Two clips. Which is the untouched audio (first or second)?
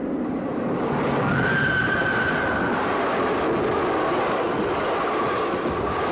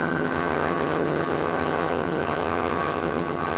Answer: first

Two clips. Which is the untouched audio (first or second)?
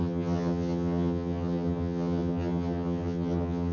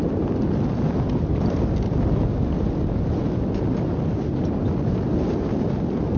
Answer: second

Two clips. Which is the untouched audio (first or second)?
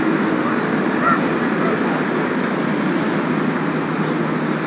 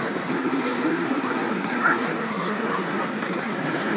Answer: first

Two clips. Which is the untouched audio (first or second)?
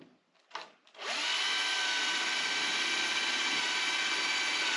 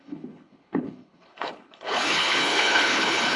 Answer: first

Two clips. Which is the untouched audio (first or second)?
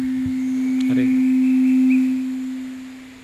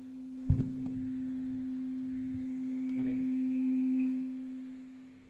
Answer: first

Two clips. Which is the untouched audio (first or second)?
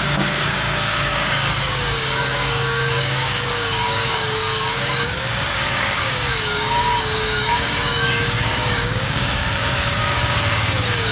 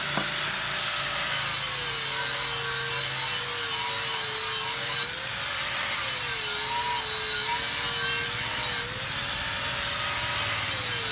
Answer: second